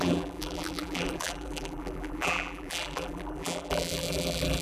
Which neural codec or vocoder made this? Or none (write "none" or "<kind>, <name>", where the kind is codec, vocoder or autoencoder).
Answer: vocoder, BigVGAN v2